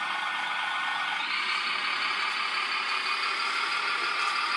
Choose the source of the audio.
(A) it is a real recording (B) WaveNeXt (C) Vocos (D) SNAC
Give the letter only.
A